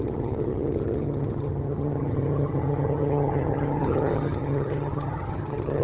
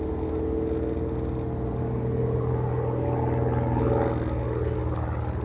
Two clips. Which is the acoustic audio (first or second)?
second